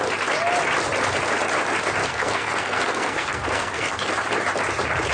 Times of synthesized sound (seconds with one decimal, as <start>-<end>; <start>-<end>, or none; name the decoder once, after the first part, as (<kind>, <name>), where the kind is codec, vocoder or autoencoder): 2.0-4.1 (codec, SNAC)